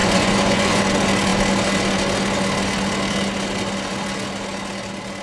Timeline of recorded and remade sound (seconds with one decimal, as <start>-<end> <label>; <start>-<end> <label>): 0.0-0.8 remade; 0.8-5.2 recorded